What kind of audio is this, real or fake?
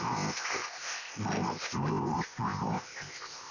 fake